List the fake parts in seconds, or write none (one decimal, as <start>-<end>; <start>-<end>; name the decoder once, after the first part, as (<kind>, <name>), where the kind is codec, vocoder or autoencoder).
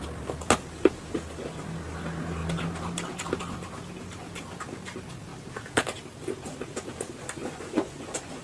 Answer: 7.4-8.4 (vocoder, Vocos)